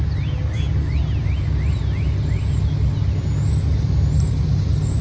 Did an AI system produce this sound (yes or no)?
no